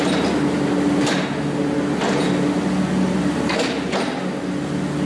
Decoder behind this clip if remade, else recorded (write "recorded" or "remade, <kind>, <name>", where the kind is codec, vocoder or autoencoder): recorded